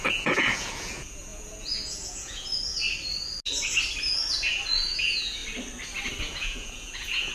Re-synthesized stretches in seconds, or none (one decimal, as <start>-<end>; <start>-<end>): 0.0-2.5; 5.0-5.4; 6.2-7.3